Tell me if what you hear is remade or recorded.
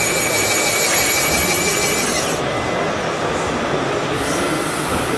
recorded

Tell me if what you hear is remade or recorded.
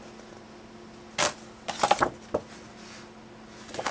recorded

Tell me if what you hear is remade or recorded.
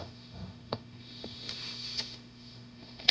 remade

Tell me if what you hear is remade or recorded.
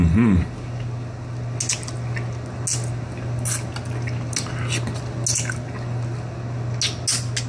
recorded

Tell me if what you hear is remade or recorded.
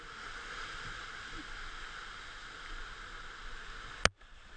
recorded